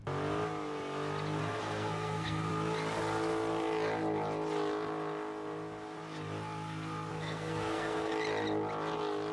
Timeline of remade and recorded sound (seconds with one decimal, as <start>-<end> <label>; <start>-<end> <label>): 0.0-1.4 recorded; 1.4-2.5 remade; 2.5-7.1 recorded; 7.1-8.1 remade; 8.1-9.3 recorded